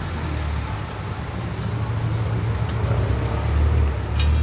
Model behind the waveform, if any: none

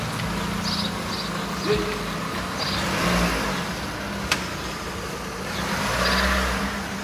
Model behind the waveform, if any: none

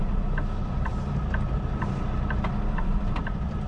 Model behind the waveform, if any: vocoder, BigVGAN v2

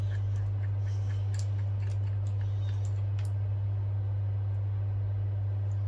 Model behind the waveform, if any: none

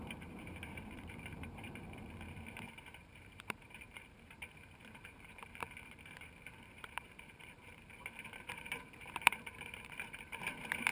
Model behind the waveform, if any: vocoder, BigVGAN v2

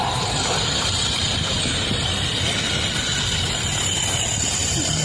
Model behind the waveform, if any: vocoder, BigVGAN v2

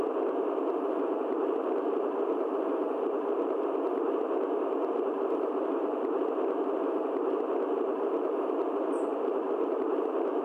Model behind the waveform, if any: vocoder, BigVGAN v2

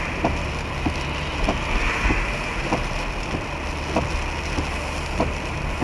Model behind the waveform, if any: none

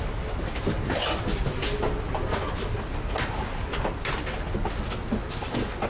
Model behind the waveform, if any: none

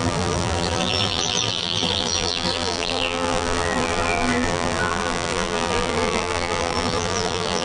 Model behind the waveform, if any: vocoder, BigVGAN v2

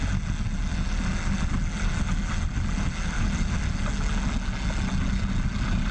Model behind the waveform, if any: none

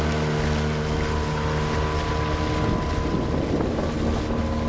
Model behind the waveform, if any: none